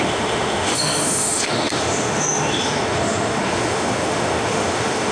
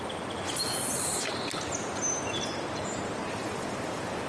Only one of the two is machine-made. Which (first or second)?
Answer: first